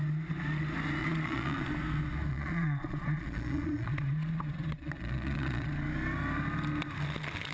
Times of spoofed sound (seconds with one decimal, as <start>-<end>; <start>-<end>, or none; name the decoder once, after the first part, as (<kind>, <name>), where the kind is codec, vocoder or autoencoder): 1.0-1.7 (vocoder, Vocos); 2.3-5.7